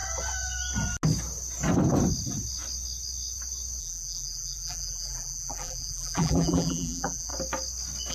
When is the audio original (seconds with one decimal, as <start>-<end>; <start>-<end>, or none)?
0.0-3.8; 7.3-8.1

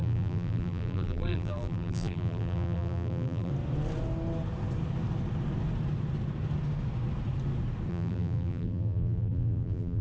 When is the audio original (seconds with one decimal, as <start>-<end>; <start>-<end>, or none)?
3.5-7.9

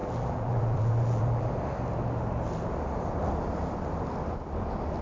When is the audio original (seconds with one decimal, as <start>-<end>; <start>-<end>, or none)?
1.5-5.0